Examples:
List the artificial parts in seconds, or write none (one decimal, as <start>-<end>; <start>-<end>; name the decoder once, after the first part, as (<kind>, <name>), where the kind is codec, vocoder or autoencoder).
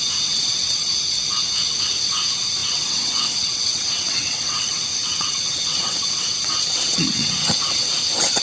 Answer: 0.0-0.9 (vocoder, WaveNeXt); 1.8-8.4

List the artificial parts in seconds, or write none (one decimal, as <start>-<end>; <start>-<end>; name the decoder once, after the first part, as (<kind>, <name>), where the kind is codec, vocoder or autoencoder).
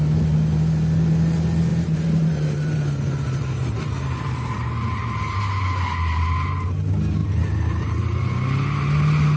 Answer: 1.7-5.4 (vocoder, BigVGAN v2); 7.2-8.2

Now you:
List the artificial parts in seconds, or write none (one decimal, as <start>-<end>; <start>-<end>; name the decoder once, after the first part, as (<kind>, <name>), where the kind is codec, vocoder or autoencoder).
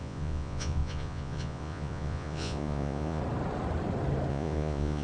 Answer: 0.0-3.2 (vocoder, Vocos); 4.3-5.0